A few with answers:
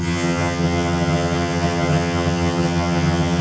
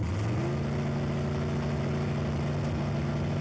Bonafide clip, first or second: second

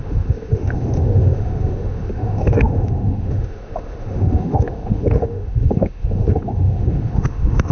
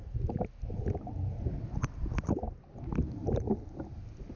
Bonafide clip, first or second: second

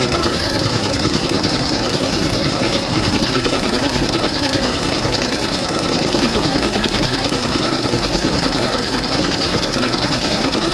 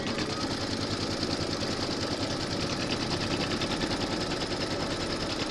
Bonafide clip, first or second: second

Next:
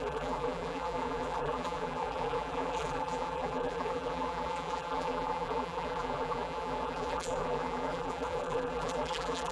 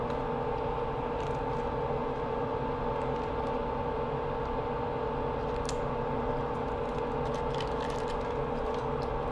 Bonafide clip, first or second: second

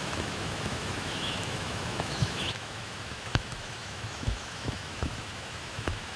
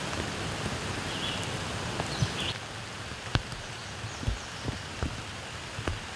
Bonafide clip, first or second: second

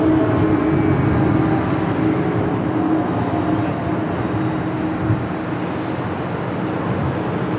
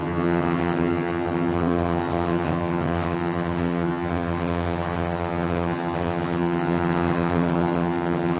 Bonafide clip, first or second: first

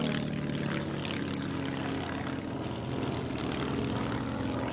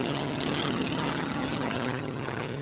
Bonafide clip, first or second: first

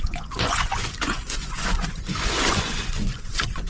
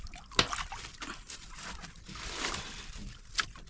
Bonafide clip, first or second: second